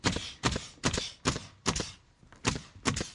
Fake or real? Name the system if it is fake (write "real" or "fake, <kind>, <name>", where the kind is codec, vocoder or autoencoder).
real